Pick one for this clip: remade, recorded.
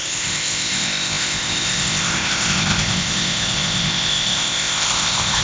remade